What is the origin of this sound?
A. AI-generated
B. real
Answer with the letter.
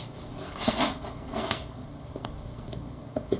A